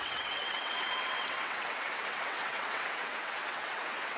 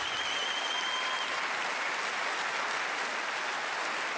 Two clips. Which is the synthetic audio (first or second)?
first